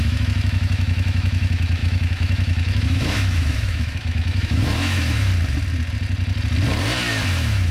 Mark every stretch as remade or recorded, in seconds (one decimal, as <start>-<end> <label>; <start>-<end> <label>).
0.0-5.3 remade; 5.3-7.3 recorded; 7.3-7.7 remade